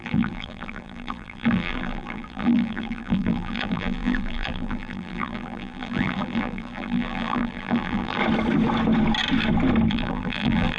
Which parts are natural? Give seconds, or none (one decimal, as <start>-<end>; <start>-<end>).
8.2-9.9